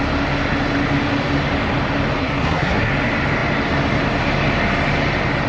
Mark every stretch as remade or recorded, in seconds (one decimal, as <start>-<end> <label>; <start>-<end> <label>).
0.0-2.2 recorded; 2.2-2.9 remade; 2.9-5.5 recorded